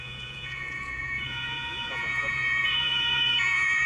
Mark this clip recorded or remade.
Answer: remade